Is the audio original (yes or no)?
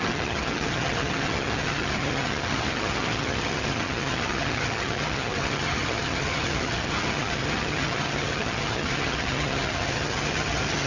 no